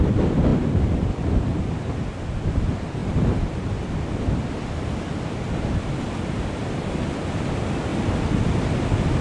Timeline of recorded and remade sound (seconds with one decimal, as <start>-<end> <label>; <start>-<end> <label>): 0.0-3.0 recorded; 3.0-4.5 remade; 4.5-7.9 recorded; 7.9-8.4 remade; 8.4-9.2 recorded